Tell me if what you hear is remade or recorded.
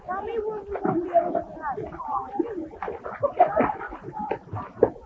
recorded